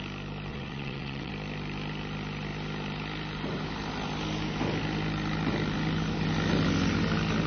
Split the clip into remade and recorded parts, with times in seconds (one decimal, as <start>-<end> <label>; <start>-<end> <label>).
0.0-0.5 recorded; 0.5-1.3 remade; 1.3-7.5 recorded